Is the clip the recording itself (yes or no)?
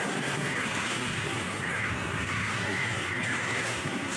no